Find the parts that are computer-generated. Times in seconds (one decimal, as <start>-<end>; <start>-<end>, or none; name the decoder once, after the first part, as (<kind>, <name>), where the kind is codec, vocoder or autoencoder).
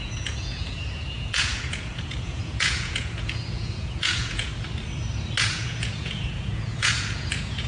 0.0-4.5 (vocoder, Vocos); 5.4-7.7